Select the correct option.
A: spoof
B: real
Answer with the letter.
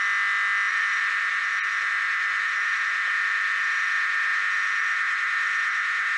B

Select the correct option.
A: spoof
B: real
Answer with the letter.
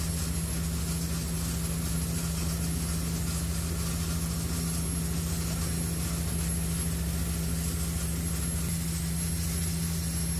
B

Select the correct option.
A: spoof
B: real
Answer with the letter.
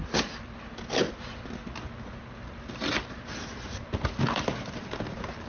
B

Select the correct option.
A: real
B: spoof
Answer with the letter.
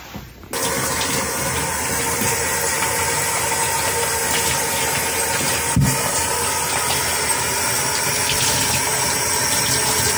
A